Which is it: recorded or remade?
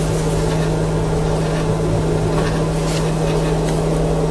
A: recorded